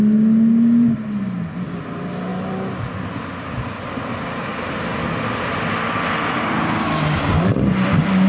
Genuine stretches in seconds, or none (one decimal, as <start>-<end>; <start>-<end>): 0.0-8.3

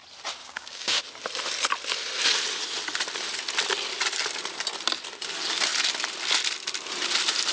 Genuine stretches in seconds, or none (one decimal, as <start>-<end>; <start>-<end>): 0.0-0.4; 1.0-7.5

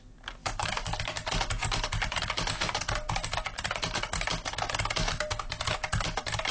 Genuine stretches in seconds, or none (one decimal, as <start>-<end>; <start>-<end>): 0.0-0.4; 1.0-6.5

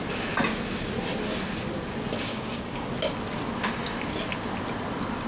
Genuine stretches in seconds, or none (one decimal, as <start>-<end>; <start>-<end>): 0.0-2.3; 2.9-5.3

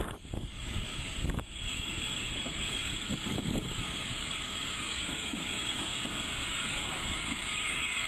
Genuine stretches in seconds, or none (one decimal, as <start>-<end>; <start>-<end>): 5.9-6.5

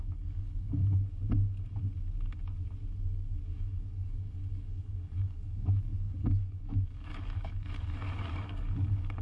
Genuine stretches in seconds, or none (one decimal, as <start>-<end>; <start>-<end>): 0.8-3.6